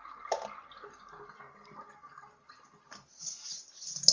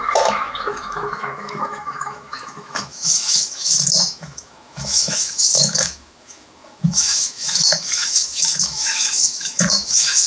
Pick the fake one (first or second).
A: second